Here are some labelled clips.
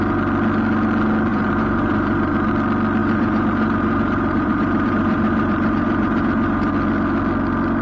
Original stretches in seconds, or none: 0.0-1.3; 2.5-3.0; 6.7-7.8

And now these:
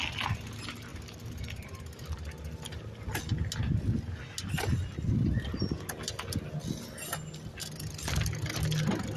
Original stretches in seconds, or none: 0.0-0.9; 1.8-9.2

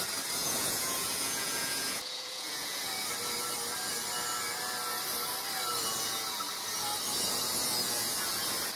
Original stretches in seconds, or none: 0.0-0.4; 2.9-8.8

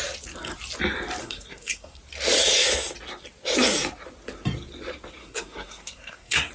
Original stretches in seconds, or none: 0.0-1.2; 2.0-5.2